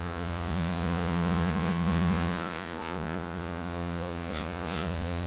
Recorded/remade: remade